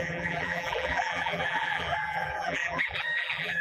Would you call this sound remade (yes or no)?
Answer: yes